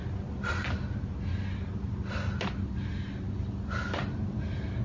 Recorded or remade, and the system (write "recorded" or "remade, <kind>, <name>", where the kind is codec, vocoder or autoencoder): recorded